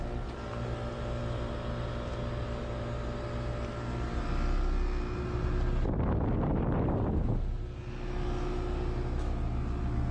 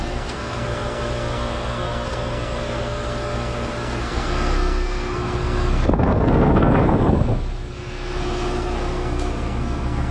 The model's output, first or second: second